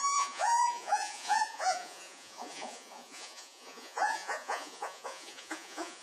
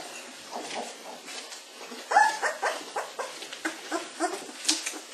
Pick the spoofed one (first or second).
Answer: first